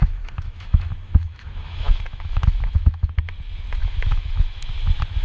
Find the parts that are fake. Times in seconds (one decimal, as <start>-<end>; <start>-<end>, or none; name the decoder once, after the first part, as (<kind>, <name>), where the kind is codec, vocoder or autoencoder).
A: 0.0-3.1 (autoencoder, DAC-VAE); 3.8-4.7